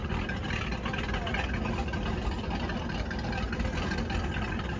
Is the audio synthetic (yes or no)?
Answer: no